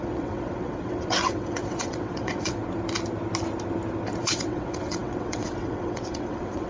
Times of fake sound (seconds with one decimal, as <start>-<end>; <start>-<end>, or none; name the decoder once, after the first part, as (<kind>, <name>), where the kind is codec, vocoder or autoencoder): 0.0-2.6 (vocoder, WaveNeXt); 4.2-6.7